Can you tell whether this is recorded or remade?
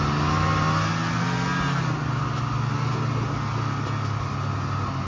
recorded